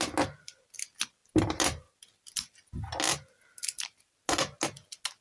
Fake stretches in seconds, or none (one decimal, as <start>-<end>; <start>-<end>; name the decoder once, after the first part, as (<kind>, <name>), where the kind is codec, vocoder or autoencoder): none